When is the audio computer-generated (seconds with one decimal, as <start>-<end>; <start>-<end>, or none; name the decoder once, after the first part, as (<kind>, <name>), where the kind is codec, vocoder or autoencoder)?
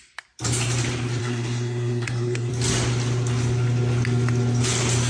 1.2-2.5 (codec, SNAC)